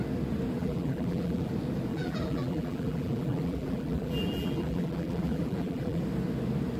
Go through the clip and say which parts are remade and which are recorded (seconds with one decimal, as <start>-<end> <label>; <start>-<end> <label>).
0.0-0.6 recorded; 0.6-1.5 remade; 1.5-1.9 recorded; 1.9-6.0 remade; 6.0-6.8 recorded